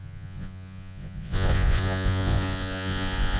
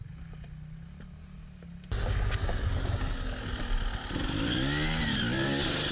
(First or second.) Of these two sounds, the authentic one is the second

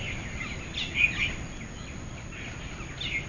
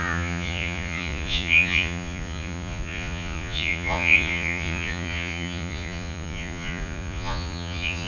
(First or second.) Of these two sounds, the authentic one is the first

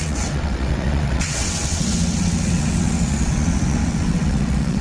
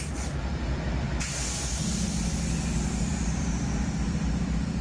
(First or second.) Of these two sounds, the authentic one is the second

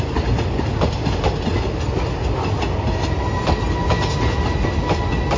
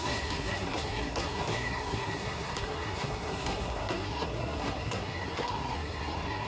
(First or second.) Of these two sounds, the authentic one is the first